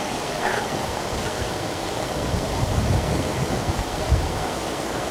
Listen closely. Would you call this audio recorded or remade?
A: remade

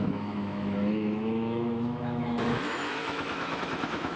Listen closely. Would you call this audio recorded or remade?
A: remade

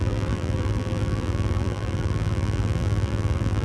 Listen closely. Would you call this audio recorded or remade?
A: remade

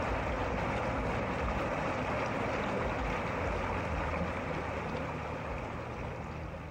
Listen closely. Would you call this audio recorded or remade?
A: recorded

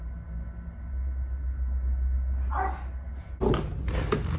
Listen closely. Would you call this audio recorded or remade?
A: recorded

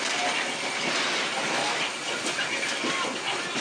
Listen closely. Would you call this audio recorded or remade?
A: recorded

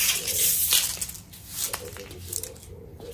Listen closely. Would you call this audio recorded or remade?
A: recorded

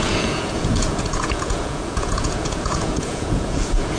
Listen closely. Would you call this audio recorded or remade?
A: remade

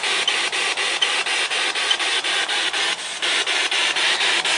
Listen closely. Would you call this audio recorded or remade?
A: recorded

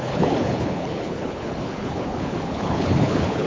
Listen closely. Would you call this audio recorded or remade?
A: remade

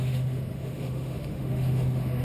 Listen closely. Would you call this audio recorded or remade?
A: remade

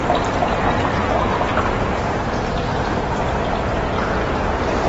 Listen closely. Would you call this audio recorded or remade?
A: remade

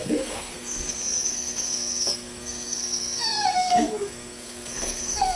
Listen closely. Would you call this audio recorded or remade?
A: remade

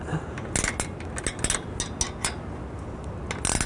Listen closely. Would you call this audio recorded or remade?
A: recorded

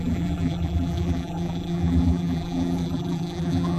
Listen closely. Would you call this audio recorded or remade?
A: remade